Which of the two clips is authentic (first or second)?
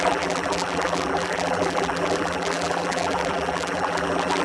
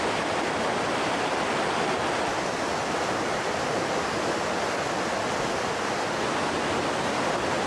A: second